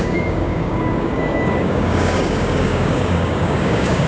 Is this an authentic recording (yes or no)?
no